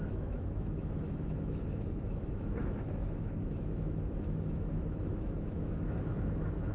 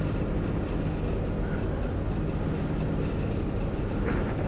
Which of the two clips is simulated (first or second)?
first